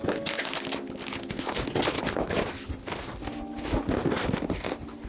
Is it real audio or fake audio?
real